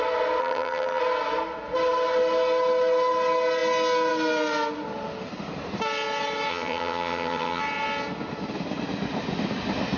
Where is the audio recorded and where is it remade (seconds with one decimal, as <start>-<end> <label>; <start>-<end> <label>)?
0.0-0.4 recorded; 0.4-1.0 remade; 1.0-6.5 recorded; 6.5-7.6 remade; 7.6-10.0 recorded